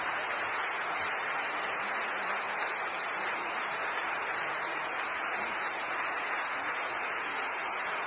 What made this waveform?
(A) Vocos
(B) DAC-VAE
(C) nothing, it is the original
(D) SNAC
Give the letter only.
C